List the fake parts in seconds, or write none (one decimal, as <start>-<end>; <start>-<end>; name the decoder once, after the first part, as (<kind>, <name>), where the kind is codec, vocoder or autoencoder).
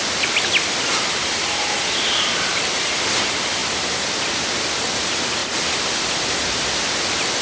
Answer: none